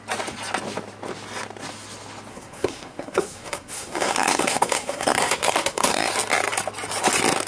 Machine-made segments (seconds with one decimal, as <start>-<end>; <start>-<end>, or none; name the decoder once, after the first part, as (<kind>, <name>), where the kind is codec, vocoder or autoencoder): 2.3-6.1 (codec, SNAC)